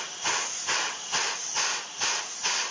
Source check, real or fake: real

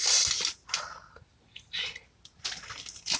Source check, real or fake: real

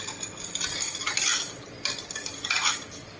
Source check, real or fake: real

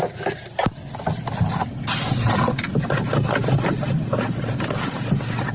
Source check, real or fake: real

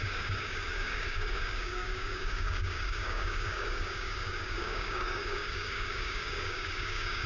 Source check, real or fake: fake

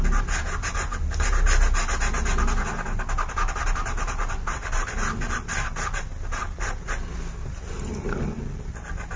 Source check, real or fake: real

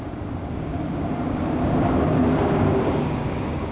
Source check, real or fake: fake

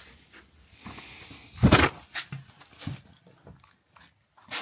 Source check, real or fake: real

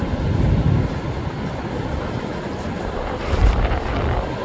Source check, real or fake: real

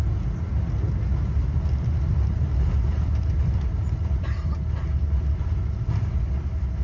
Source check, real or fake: real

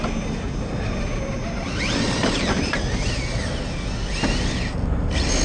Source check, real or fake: real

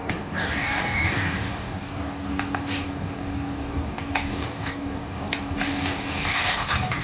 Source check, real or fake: fake